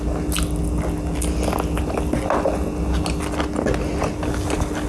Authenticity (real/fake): real